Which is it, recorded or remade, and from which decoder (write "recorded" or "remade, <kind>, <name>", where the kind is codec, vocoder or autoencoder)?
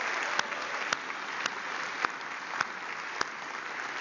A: recorded